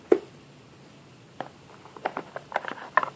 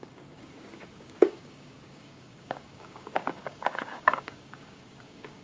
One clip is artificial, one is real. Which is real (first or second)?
first